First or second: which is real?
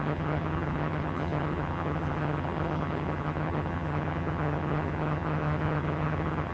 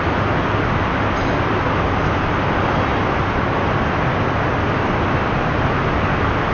second